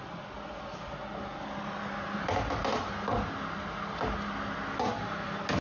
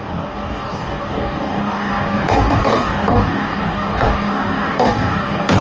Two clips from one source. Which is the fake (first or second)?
second